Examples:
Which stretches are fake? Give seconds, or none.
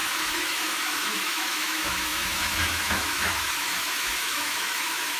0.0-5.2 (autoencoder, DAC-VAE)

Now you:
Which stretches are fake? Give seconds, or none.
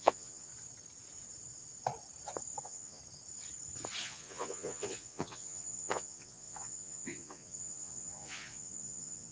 0.0-0.5 (vocoder, Vocos); 2.6-3.0; 4.0-9.3